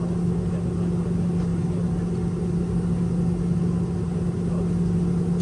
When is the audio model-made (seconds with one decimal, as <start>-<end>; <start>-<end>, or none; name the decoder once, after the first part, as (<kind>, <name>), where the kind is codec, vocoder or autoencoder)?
none